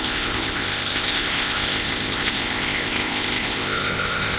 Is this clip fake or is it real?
fake